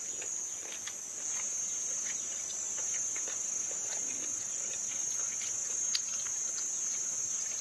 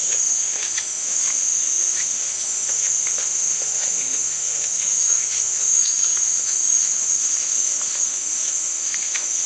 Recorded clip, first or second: first